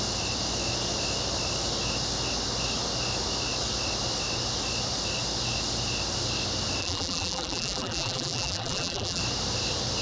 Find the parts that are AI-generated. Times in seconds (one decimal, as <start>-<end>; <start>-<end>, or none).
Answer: 6.8-9.2